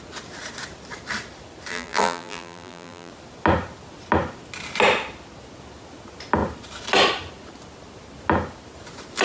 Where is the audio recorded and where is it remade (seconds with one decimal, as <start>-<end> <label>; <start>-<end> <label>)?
0.0-1.7 recorded; 1.7-3.1 remade; 3.1-9.2 recorded